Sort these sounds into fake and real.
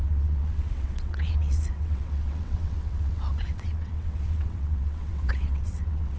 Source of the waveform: fake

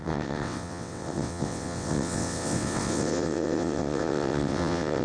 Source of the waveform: fake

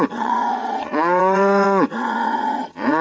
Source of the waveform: fake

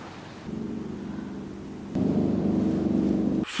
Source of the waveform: real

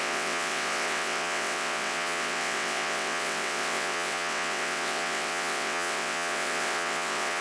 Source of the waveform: fake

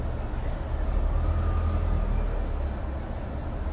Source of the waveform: real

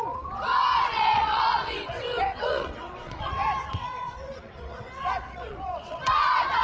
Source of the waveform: fake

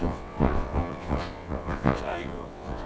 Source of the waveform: fake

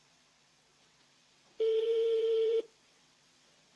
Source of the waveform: fake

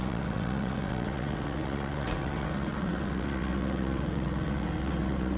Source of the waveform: fake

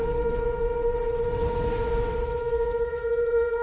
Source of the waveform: fake